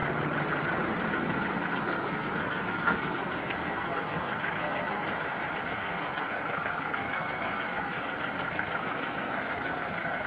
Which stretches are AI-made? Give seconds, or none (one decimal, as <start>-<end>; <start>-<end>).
1.1-5.1; 5.6-10.3